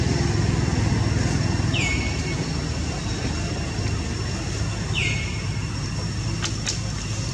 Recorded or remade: recorded